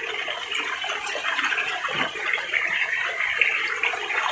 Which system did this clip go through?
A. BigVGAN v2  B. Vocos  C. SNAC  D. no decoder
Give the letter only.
D